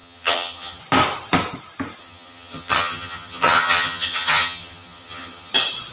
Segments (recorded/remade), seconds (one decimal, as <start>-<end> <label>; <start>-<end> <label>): 0.0-0.8 remade; 0.8-2.0 recorded; 2.0-5.5 remade; 5.5-5.9 recorded